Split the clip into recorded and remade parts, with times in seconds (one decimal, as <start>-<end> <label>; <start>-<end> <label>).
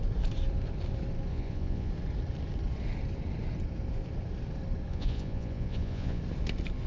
0.0-1.3 recorded; 1.3-1.9 remade; 1.9-4.9 recorded; 4.9-6.2 remade; 6.2-6.9 recorded